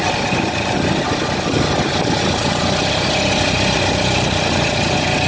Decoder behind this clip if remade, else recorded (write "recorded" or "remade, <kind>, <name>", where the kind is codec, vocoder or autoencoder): recorded